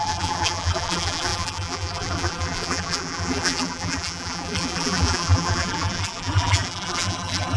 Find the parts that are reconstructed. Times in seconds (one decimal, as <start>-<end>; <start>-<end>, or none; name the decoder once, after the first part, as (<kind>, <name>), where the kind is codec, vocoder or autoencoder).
0.0-7.6 (vocoder, BigVGAN v2)